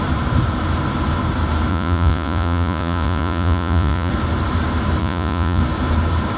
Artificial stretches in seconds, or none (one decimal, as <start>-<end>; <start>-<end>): 1.7-4.1; 5.0-5.6